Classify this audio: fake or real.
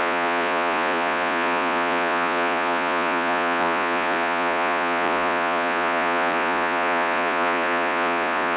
fake